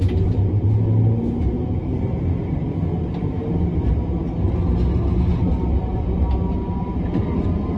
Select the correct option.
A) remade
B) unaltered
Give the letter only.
B